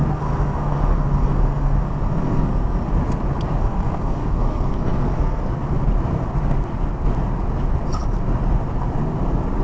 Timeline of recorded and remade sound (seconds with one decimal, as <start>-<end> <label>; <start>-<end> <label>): 0.0-2.9 remade; 2.9-3.6 recorded; 3.6-5.4 remade; 5.4-9.6 recorded